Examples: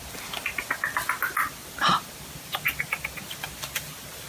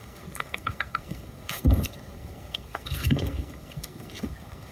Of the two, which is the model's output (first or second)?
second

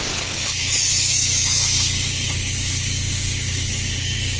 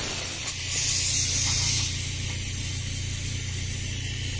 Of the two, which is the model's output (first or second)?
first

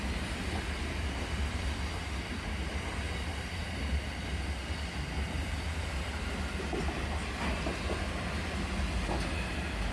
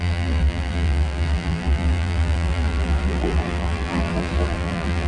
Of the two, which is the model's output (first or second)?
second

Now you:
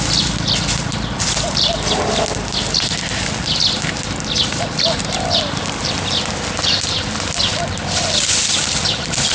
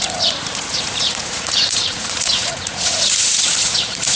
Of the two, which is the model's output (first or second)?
second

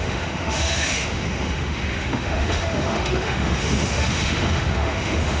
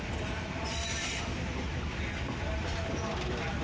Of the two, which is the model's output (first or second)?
first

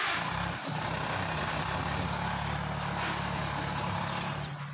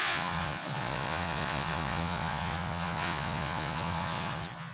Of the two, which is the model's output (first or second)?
second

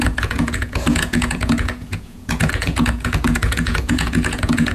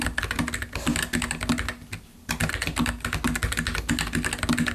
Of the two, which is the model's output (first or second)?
first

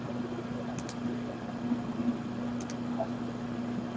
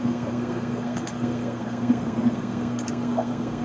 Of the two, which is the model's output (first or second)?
second